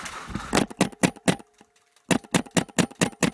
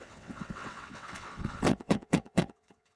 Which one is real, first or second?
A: first